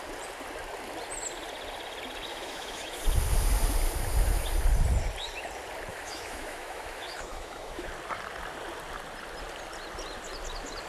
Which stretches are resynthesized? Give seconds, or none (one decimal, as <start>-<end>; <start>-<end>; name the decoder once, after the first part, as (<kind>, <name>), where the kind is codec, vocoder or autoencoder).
2.3-3.0 (autoencoder, DAC-VAE); 5.9-7.9